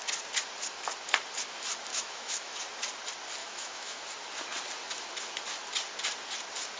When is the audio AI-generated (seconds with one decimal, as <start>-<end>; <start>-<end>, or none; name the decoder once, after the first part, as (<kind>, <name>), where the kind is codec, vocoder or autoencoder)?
1.9-2.6 (autoencoder, DAC-VAE); 3.4-4.0